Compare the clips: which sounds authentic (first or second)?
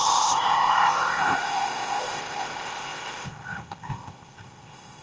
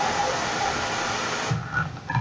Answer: second